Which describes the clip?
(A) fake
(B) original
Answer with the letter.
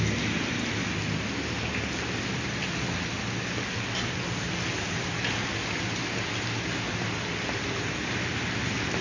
B